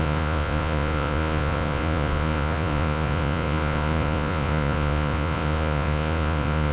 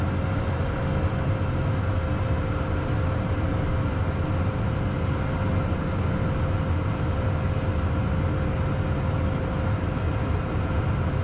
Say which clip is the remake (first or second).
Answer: first